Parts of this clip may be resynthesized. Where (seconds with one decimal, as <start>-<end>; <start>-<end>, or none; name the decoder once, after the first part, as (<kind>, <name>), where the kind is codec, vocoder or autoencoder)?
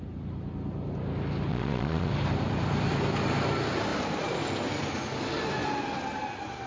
1.5-2.1 (vocoder, Vocos)